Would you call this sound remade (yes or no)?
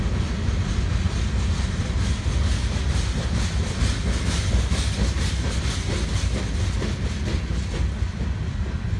no